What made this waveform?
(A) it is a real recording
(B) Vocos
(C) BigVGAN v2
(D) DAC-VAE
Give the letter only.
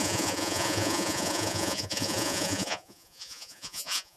B